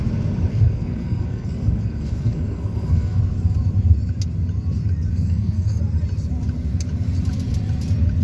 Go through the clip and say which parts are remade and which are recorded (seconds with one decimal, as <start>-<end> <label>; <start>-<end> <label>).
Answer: 0.0-0.5 recorded; 0.5-3.2 remade; 3.2-5.1 recorded; 5.1-5.8 remade; 5.8-8.2 recorded